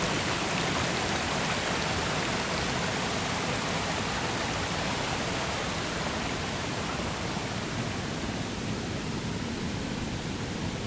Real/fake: real